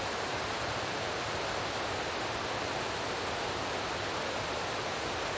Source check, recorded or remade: recorded